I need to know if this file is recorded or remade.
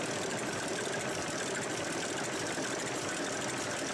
remade